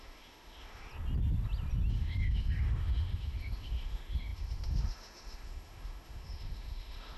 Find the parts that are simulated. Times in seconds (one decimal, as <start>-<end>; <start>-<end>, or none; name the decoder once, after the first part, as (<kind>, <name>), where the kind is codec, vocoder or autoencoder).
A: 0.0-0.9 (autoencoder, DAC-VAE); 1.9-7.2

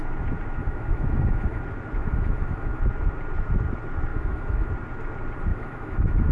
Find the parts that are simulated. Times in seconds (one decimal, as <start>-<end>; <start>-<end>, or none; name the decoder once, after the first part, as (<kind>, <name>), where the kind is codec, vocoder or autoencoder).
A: 0.6-1.6 (autoencoder, DAC-VAE); 2.0-2.8; 4.1-4.7; 5.5-6.3

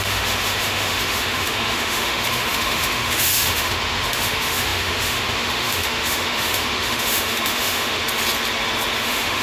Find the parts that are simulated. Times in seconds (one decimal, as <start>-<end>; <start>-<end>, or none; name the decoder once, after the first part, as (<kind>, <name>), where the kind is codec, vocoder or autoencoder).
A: 0.0-8.0 (autoencoder, DAC-VAE); 9.0-9.4

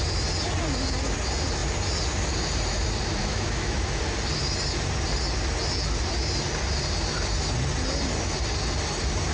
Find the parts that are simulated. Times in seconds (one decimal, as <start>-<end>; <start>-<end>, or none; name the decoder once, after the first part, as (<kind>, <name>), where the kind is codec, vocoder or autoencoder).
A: 3.2-4.0 (autoencoder, DAC-VAE)